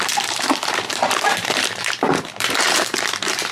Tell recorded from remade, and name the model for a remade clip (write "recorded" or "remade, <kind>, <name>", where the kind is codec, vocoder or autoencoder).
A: remade, vocoder, BigVGAN v2